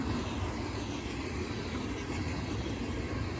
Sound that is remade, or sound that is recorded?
recorded